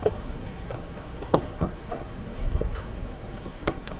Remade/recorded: remade